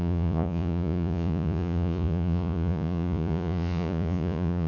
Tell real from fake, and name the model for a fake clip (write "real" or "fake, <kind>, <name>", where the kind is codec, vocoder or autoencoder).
fake, vocoder, Vocos